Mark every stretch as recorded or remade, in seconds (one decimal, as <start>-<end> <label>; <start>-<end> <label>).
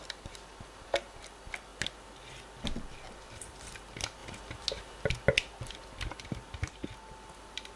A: 0.0-7.8 recorded